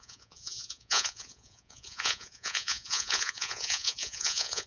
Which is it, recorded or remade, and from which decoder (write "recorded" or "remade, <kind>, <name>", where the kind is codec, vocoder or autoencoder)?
remade, vocoder, Vocos